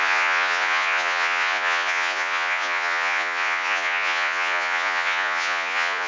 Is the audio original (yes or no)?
no